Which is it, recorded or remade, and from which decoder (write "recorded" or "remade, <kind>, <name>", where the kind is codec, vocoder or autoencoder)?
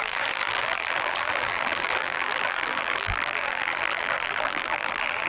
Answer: remade, vocoder, BigVGAN v2